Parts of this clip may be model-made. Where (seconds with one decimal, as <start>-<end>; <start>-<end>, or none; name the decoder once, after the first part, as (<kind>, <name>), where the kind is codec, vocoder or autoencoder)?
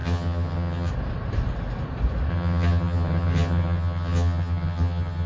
0.0-0.9 (vocoder, HiFi-GAN); 2.3-5.3